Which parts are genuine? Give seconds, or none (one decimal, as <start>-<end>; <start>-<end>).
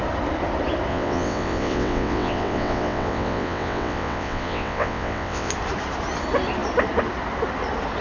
0.0-0.9; 5.5-8.0